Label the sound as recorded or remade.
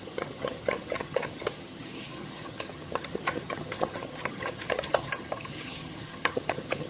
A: remade